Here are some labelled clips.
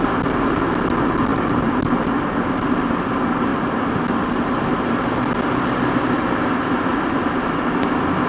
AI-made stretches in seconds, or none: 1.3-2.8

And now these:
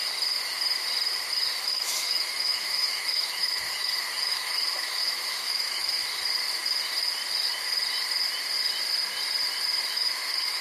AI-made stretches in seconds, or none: 1.6-6.0; 9.9-10.6

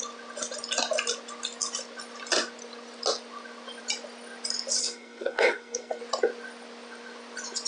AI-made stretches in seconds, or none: 4.8-6.0

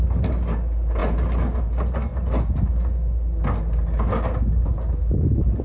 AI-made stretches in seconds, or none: none

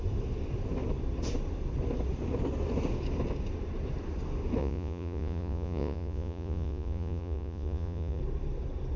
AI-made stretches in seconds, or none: 4.6-8.2

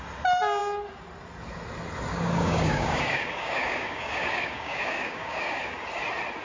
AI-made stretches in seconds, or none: 2.1-5.6

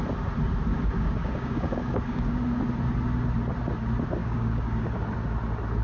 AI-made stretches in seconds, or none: 0.7-2.6; 4.2-4.9